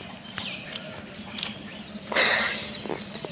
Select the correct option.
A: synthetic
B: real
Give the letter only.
B